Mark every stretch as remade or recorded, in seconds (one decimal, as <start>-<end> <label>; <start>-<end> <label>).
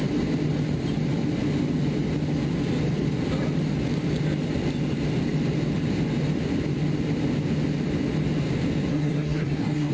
0.0-8.9 recorded; 8.9-9.9 remade